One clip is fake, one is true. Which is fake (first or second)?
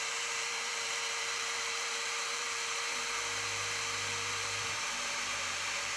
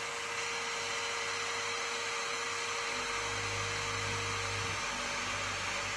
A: first